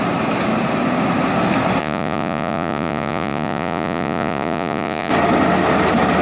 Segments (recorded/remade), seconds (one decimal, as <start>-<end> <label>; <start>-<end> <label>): 0.0-1.8 recorded; 1.8-5.1 remade; 5.1-6.2 recorded